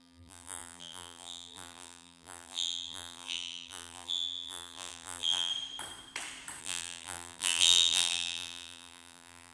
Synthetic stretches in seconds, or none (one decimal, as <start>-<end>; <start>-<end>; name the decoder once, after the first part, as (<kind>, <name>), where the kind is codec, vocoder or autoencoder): 0.0-5.5 (vocoder, BigVGAN v2); 6.6-9.5